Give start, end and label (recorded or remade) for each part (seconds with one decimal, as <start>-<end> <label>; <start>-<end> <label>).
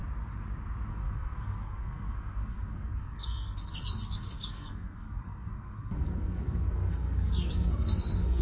0.0-0.9 recorded; 0.9-8.4 remade